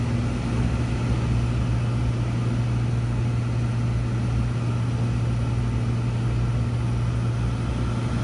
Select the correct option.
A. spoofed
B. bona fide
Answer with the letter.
B